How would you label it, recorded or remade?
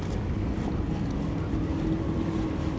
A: recorded